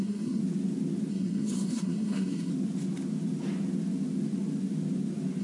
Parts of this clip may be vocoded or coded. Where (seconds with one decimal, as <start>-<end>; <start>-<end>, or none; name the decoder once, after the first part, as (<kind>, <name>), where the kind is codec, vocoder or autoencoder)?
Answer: 0.0-0.4 (codec, SNAC); 1.1-2.5